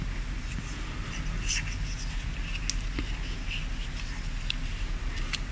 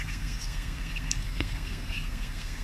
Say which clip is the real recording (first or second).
first